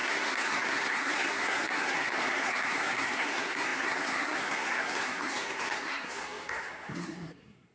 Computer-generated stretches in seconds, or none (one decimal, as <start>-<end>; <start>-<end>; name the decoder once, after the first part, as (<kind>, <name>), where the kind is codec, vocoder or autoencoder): 0.0-7.7 (codec, SNAC)